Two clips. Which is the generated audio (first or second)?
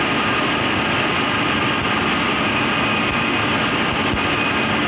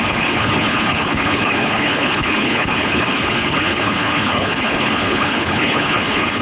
second